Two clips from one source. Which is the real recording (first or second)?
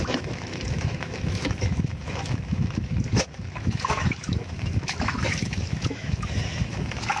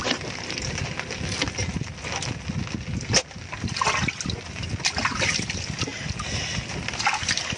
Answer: second